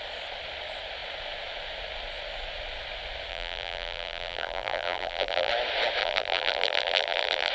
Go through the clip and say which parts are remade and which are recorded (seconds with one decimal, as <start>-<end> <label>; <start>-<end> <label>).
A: 0.0-3.3 recorded; 3.3-5.5 remade; 5.5-6.0 recorded; 6.0-7.5 remade